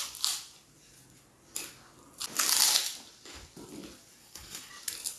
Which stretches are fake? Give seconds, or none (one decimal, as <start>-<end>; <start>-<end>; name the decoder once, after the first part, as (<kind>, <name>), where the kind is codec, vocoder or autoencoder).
4.2-4.7 (codec, SNAC)